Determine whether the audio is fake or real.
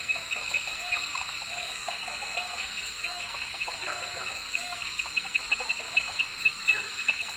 fake